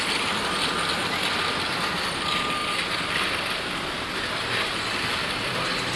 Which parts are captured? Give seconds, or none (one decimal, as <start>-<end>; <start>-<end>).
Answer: 0.0-6.0